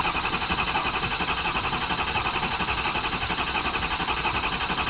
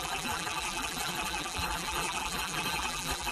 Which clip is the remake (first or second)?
second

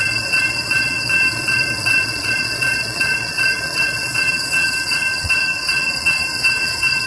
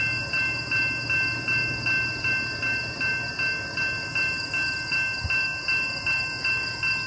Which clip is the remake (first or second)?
first